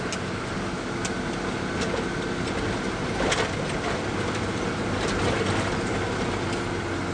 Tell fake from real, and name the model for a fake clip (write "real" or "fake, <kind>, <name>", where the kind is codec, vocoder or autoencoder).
real